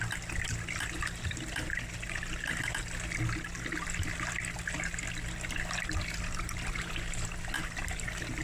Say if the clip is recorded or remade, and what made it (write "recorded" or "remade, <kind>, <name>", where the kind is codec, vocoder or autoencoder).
recorded